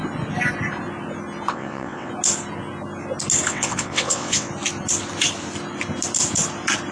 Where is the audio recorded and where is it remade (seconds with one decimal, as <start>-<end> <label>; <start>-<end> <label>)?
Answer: 0.0-1.5 recorded; 1.5-2.1 remade; 2.1-3.5 recorded; 3.5-4.5 remade; 4.5-6.9 recorded

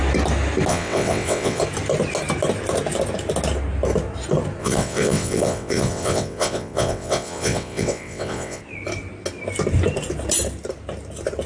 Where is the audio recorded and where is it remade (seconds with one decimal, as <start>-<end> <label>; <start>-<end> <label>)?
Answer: 0.0-0.7 recorded; 0.7-1.6 remade; 1.6-4.6 recorded; 4.6-8.6 remade; 8.6-11.5 recorded

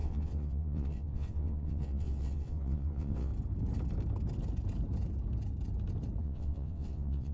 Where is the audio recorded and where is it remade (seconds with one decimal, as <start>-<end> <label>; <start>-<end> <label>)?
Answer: 0.0-3.3 remade; 3.3-6.2 recorded; 6.2-7.3 remade

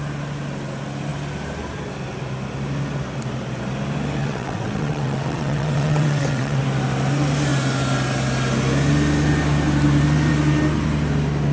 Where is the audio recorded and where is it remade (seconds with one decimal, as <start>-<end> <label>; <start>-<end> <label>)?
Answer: 0.0-4.2 recorded; 4.2-6.6 remade; 6.6-11.5 recorded

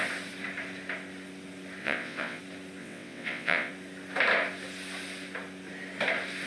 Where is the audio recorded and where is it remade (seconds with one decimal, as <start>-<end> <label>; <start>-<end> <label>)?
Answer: 0.0-1.8 recorded; 1.8-2.4 remade; 2.4-2.8 recorded; 2.8-3.7 remade; 3.7-6.5 recorded

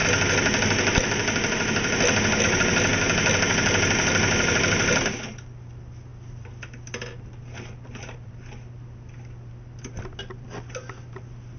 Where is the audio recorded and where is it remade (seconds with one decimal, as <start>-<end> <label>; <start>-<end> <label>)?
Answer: 0.0-11.6 recorded

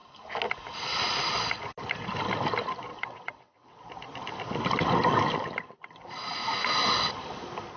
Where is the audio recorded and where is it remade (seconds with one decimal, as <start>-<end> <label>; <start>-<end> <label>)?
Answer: 0.0-2.9 recorded; 2.9-3.8 remade; 3.8-7.8 recorded